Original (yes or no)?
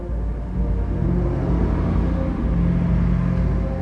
yes